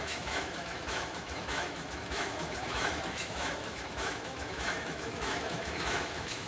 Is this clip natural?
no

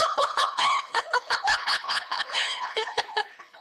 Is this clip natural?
no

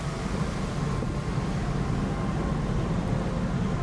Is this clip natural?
yes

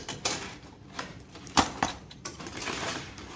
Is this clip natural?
no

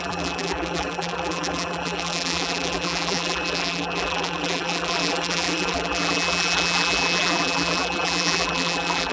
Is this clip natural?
no